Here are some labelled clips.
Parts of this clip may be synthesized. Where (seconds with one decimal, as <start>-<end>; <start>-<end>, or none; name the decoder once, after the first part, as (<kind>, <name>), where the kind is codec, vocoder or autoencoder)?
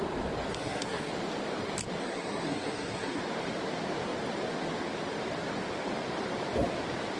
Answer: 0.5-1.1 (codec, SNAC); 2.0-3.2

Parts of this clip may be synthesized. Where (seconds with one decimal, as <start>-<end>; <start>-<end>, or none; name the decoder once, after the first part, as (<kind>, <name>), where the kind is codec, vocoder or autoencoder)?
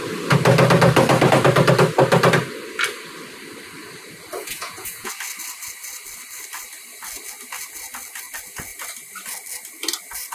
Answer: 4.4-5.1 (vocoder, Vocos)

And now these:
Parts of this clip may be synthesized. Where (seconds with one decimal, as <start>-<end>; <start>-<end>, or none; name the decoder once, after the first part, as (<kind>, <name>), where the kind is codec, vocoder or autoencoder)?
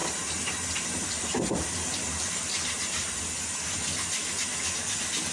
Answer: 0.0-3.2 (vocoder, BigVGAN v2)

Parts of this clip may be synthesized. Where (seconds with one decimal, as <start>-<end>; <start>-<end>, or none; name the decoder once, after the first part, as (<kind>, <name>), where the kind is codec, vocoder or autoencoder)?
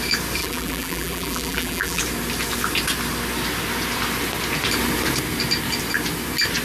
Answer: 0.4-2.0 (vocoder, BigVGAN v2)